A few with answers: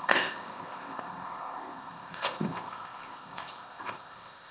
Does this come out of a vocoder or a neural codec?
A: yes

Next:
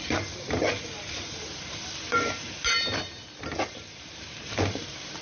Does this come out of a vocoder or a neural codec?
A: yes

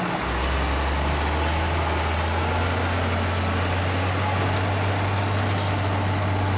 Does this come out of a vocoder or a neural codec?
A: no